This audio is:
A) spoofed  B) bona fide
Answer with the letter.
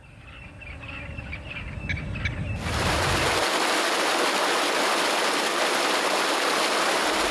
B